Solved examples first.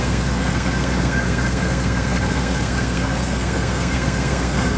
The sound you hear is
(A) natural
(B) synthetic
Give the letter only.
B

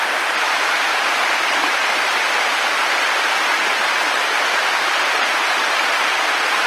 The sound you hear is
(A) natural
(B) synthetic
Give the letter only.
A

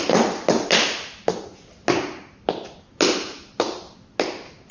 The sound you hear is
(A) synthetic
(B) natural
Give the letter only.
B